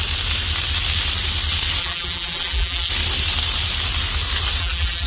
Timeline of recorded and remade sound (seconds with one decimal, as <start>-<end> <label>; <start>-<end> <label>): 0.0-1.8 recorded; 1.8-2.9 remade; 2.9-4.6 recorded; 4.6-5.1 remade

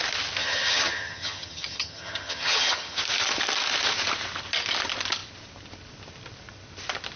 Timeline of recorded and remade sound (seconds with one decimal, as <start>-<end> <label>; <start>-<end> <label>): 0.0-0.4 recorded; 0.4-3.0 remade; 3.0-7.2 recorded